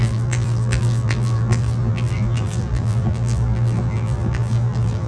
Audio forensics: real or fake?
fake